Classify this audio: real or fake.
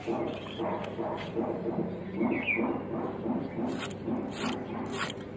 real